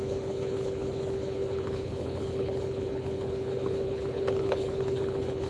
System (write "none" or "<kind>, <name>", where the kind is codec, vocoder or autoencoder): codec, HILCodec